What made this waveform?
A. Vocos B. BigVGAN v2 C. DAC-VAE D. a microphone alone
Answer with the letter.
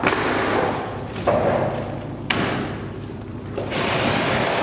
B